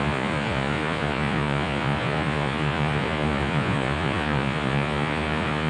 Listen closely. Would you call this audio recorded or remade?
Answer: remade